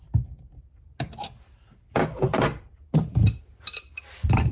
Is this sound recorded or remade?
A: recorded